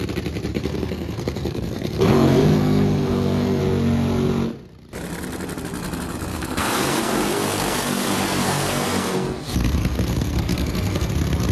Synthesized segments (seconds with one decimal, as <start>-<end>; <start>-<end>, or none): 0.5-3.6; 6.3-11.1